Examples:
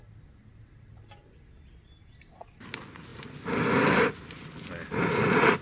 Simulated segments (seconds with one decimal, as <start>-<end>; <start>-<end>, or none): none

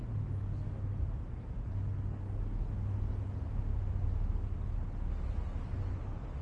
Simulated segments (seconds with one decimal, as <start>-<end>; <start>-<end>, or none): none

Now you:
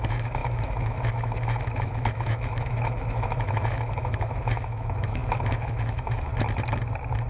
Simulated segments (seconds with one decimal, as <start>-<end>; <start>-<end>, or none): 0.0-6.3